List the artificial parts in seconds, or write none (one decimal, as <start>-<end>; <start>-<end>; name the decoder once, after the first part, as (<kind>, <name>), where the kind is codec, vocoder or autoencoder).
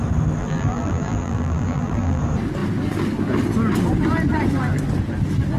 0.4-2.2 (vocoder, BigVGAN v2)